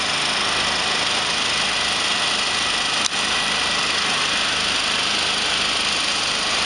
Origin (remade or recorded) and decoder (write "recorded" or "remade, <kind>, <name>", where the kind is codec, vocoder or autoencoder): recorded